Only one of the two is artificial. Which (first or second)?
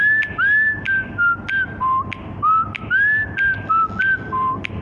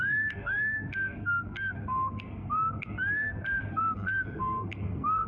second